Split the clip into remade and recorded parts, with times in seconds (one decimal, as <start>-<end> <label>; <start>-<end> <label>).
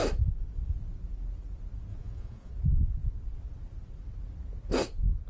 0.0-1.9 recorded; 1.9-2.5 remade; 2.5-5.3 recorded